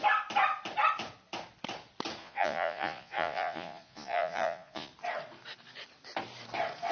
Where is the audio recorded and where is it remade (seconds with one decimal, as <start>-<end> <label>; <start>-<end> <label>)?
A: 0.0-2.2 recorded; 2.2-4.9 remade; 4.9-6.9 recorded